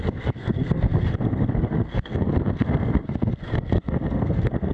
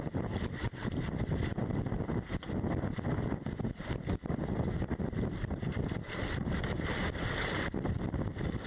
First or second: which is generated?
first